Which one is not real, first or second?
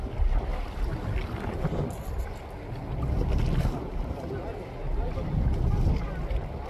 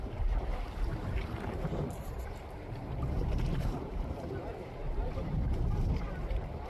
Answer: second